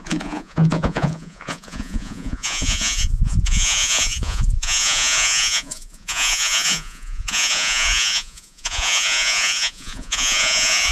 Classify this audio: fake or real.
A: fake